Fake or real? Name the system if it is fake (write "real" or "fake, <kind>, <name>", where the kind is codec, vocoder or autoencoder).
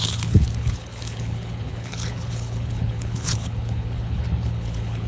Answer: fake, codec, HILCodec